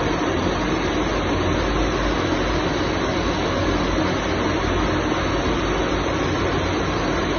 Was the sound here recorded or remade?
recorded